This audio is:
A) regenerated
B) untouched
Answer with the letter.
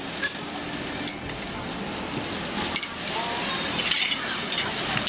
B